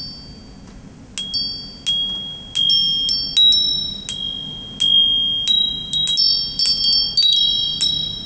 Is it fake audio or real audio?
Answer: real